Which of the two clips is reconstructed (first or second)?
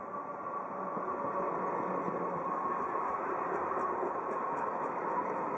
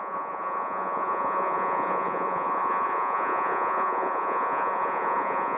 second